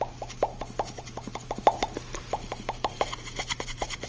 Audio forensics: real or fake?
real